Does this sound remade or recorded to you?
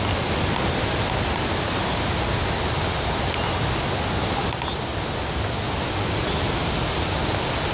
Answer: recorded